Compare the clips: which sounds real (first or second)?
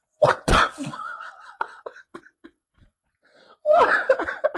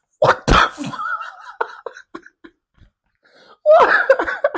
second